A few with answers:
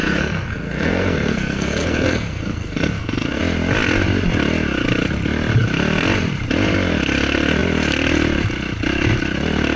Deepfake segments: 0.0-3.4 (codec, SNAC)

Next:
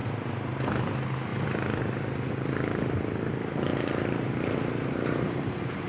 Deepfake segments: 0.0-0.8 (vocoder, BigVGAN v2); 3.7-5.9